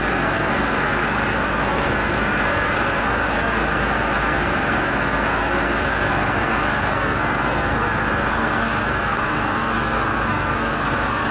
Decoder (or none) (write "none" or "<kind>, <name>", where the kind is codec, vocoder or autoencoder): codec, SNAC